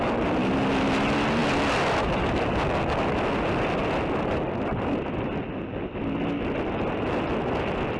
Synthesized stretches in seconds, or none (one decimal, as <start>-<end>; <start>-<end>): none